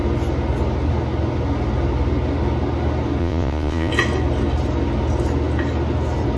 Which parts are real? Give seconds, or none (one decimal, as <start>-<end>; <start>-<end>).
0.0-3.2; 3.9-6.4